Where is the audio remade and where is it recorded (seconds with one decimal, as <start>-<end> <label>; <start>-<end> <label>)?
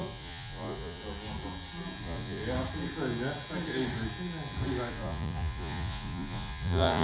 0.0-1.0 remade; 1.0-2.0 recorded; 2.0-2.4 remade; 2.4-4.9 recorded; 4.9-7.0 remade